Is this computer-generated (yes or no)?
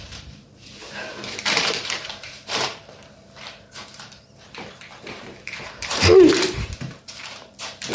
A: yes